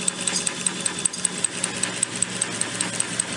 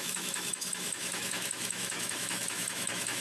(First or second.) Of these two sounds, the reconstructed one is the second